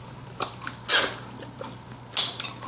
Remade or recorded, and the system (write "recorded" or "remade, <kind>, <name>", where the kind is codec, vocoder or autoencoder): recorded